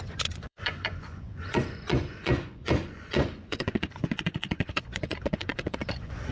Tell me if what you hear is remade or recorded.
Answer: remade